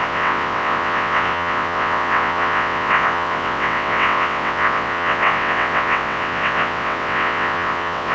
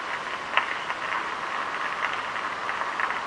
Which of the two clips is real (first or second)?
second